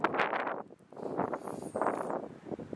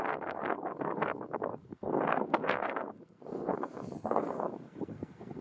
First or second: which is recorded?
first